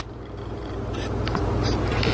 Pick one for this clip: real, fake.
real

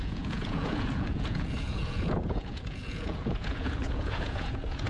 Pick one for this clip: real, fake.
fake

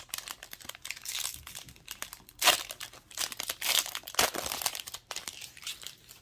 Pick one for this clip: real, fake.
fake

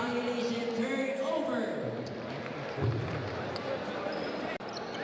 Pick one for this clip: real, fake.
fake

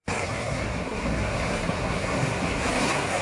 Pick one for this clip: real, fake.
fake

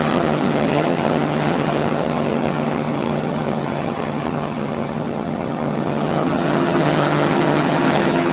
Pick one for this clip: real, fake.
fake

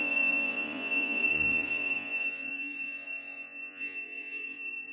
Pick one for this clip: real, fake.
fake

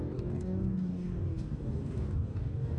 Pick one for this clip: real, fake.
fake